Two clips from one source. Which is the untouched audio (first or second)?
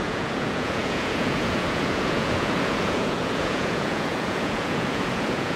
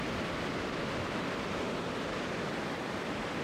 second